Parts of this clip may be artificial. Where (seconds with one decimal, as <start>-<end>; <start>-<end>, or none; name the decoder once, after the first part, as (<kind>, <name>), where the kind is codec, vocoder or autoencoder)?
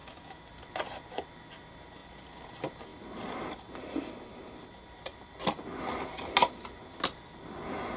0.0-0.5 (autoencoder, DAC-VAE)